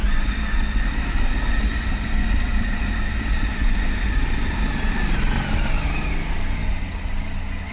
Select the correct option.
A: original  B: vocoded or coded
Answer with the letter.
A